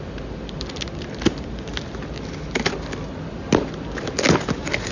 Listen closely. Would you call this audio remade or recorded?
recorded